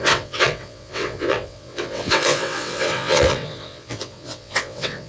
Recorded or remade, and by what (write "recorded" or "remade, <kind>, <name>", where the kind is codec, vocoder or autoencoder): remade, vocoder, WaveNeXt